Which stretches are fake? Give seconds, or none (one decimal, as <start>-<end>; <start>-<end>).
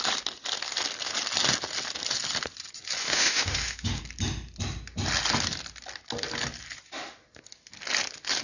3.0-4.0